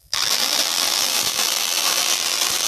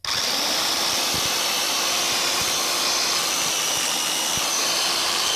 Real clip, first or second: second